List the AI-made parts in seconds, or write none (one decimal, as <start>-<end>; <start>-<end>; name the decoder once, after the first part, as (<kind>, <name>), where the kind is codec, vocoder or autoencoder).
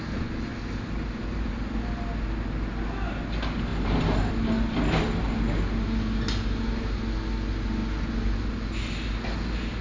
none